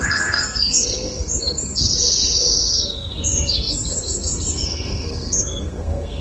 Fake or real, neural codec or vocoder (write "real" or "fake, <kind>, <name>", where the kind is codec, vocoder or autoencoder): fake, codec, SNAC